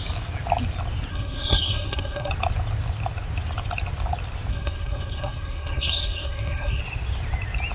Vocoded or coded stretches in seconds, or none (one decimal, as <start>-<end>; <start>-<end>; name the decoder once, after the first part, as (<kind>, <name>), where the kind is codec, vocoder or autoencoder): 1.1-2.3 (codec, SNAC); 4.5-6.8